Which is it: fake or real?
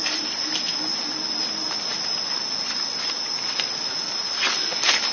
real